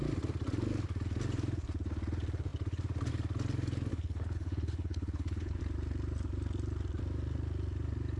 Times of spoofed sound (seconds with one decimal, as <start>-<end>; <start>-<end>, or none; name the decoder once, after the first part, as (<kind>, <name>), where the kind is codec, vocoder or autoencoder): 3.9-5.6 (codec, HILCodec)